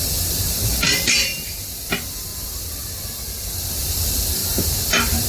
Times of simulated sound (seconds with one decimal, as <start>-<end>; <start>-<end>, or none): 0.0-5.3